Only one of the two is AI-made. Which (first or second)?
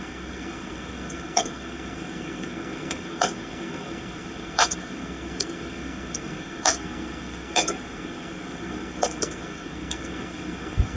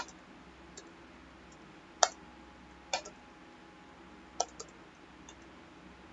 first